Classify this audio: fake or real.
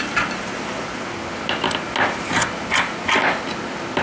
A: real